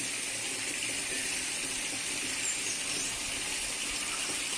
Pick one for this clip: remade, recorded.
recorded